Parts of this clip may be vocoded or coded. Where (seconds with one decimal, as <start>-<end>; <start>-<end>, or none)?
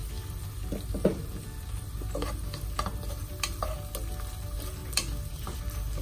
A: none